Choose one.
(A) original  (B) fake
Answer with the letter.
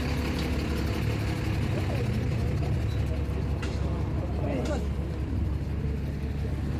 A